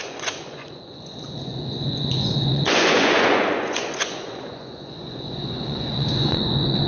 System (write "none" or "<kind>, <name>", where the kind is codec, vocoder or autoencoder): vocoder, Vocos